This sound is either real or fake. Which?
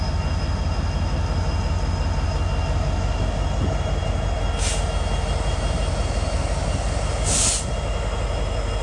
real